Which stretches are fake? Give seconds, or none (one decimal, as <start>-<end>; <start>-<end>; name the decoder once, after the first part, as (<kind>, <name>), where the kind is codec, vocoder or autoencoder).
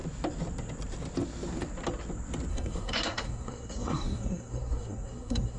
2.5-5.6 (codec, SNAC)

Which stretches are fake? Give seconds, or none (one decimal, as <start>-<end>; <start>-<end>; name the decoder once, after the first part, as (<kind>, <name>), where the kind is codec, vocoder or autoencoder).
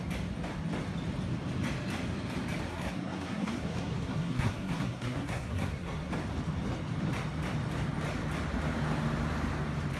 2.7-6.1 (codec, SNAC)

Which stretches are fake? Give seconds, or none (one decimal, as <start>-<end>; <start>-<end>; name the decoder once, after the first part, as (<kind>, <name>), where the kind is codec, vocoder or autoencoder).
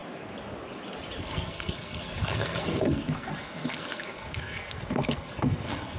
1.2-6.0 (codec, SNAC)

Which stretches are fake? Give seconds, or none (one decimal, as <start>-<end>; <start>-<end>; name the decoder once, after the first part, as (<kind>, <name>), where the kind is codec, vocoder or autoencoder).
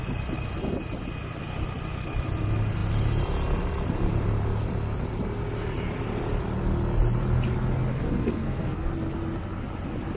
7.9-8.9 (codec, SNAC)